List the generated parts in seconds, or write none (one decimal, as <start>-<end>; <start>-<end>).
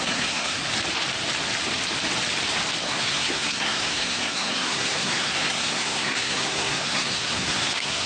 0.0-0.6; 2.8-8.1